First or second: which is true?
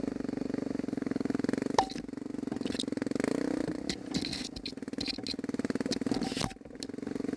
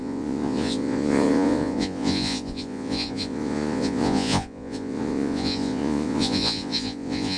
first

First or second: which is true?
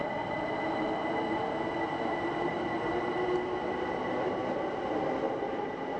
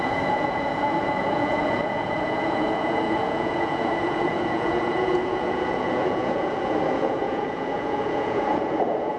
first